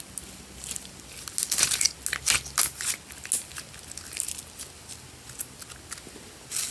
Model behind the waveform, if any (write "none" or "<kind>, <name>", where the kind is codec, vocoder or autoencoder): none